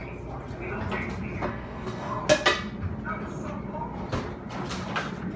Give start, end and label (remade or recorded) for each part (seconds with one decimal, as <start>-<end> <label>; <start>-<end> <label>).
0.0-1.5 recorded; 1.5-2.2 remade; 2.2-5.4 recorded